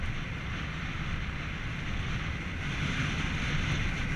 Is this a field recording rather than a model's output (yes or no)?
yes